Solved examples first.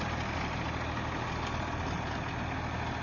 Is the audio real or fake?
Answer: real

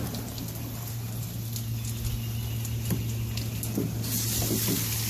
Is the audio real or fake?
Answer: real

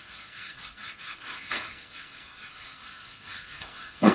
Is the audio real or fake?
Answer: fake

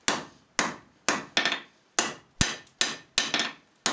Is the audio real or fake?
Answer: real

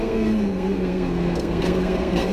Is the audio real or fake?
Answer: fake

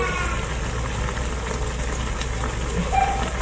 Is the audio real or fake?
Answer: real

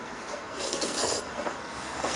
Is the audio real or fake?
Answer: fake